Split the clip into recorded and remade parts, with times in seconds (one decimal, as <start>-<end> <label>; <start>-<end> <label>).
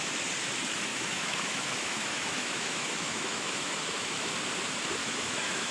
0.0-0.9 recorded; 0.9-4.3 remade; 4.3-5.0 recorded; 5.0-5.7 remade